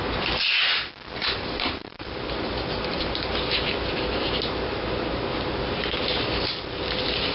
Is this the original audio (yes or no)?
yes